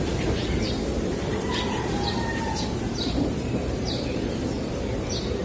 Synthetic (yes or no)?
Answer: yes